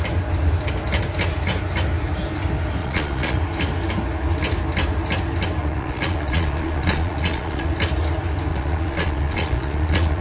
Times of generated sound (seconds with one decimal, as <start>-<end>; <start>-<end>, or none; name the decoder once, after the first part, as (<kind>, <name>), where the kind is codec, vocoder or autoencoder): 2.8-3.4 (vocoder, Vocos); 5.6-7.7; 8.5-10.2

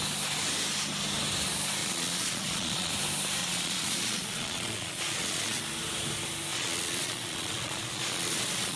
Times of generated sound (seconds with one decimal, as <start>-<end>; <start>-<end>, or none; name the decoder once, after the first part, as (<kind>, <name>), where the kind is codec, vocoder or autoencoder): 1.8-2.9 (vocoder, Vocos); 3.4-5.6; 6.5-8.8